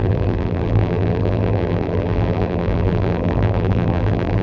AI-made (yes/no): yes